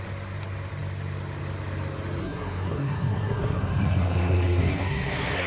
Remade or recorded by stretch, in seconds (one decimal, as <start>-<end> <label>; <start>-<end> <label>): 0.0-2.2 recorded; 2.2-5.5 remade